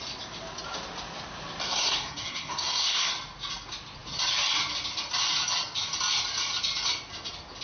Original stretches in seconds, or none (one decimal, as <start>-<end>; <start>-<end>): 0.0-1.6; 3.1-7.6